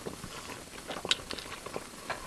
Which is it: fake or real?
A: real